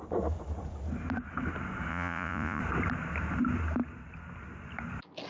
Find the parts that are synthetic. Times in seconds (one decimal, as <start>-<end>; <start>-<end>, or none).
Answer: 1.9-2.6